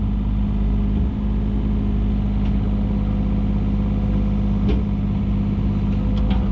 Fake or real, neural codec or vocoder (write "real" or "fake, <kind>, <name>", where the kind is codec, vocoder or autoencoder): real